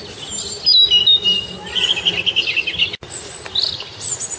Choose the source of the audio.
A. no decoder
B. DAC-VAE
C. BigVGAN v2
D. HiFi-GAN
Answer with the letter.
A